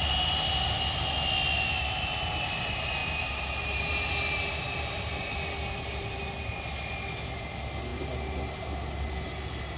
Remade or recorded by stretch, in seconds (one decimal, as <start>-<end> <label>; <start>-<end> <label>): 0.0-3.0 recorded; 3.0-6.2 remade; 6.2-9.8 recorded

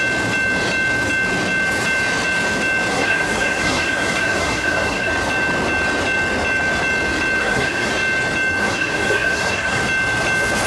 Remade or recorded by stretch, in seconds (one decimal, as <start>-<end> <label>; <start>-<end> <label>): 0.0-2.9 recorded; 2.9-5.1 remade; 5.1-7.4 recorded; 7.4-7.9 remade; 7.9-8.6 recorded; 8.6-9.8 remade; 9.8-10.7 recorded

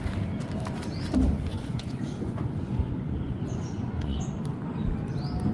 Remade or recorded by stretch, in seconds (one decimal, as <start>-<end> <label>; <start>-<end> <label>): 0.0-1.5 recorded; 1.5-4.3 remade; 4.3-5.5 recorded

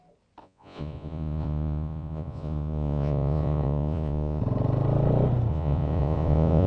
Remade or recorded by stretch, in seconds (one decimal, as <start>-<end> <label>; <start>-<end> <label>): 0.0-0.4 recorded; 0.4-4.4 remade; 4.4-5.5 recorded; 5.5-6.7 remade

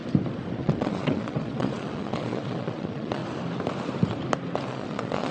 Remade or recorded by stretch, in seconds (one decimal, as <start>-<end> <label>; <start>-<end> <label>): 0.0-0.6 recorded; 0.6-3.2 remade; 3.2-4.7 recorded; 4.7-5.3 remade

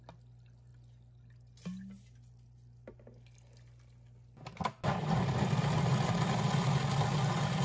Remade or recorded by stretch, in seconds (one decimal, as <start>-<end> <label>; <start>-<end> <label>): 0.0-7.6 recorded

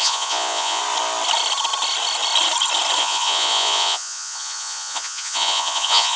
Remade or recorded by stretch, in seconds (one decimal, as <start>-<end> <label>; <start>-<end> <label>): 0.0-0.8 remade; 0.8-3.0 recorded; 3.0-6.2 remade

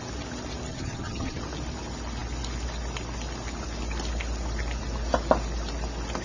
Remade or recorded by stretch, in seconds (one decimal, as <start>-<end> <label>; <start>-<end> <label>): 0.0-0.7 recorded; 0.7-1.4 remade; 1.4-6.2 recorded